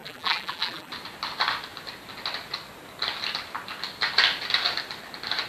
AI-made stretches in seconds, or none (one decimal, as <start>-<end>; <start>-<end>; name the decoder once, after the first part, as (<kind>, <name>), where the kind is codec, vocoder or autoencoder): 0.0-0.9 (vocoder, BigVGAN v2)